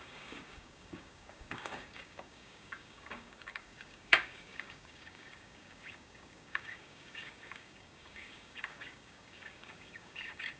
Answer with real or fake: fake